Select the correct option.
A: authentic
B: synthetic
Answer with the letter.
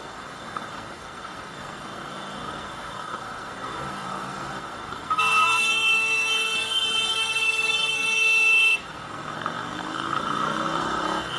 B